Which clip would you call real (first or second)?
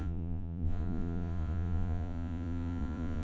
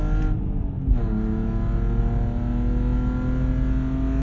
second